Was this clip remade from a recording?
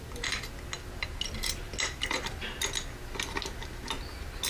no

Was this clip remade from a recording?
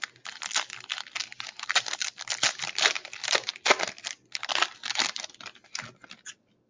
no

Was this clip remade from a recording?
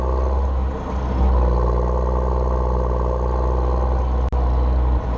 no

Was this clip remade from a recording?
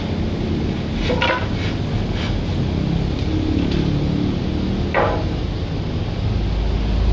no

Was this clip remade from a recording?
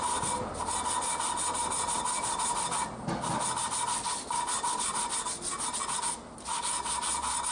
no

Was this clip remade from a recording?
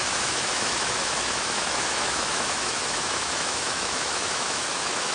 yes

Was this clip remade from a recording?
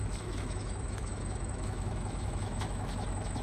yes